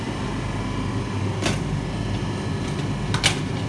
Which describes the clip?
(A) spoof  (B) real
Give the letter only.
B